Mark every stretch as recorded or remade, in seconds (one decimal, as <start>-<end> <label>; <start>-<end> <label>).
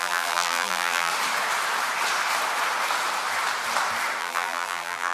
0.0-1.1 remade; 1.1-4.2 recorded; 4.2-5.1 remade